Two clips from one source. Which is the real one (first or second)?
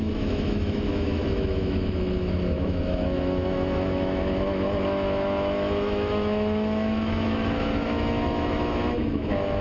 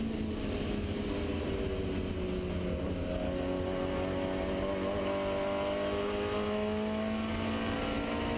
second